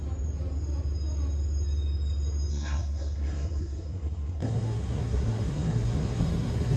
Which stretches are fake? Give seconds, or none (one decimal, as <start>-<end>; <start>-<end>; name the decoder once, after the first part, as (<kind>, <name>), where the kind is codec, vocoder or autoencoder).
2.5-6.8 (codec, SNAC)